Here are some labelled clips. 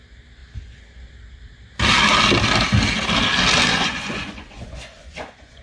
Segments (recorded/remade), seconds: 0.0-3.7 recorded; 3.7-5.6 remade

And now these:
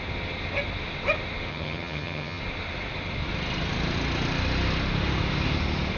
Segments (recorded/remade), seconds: 0.0-1.5 recorded; 1.5-2.4 remade; 2.4-6.0 recorded

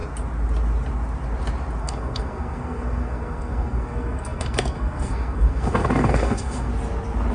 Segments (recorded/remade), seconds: 0.0-1.8 recorded; 1.8-6.7 remade; 6.7-7.3 recorded

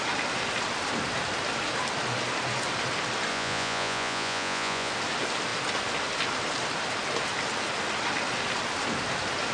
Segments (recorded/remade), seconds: 0.0-3.3 recorded; 3.3-4.9 remade; 4.9-9.5 recorded

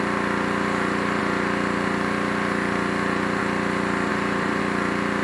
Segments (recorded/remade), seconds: 0.0-4.1 recorded; 4.1-4.6 remade; 4.6-5.2 recorded

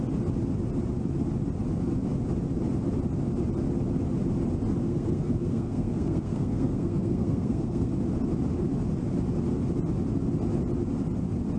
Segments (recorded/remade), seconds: 0.0-4.8 recorded; 4.8-7.9 remade; 7.9-11.6 recorded